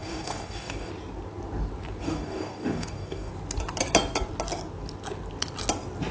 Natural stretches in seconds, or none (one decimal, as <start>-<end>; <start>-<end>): 0.9-2.0; 3.3-6.1